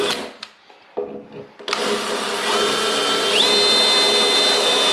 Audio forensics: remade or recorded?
recorded